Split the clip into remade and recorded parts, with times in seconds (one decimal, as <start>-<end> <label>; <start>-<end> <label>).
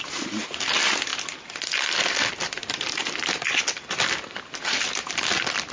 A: 0.0-5.7 recorded